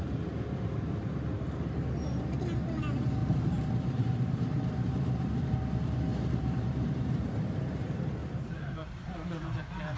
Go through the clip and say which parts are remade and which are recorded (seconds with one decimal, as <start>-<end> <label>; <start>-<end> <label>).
0.0-3.2 recorded; 3.2-5.5 remade; 5.5-6.1 recorded; 6.1-7.7 remade; 7.7-8.2 recorded; 8.2-9.5 remade; 9.5-10.0 recorded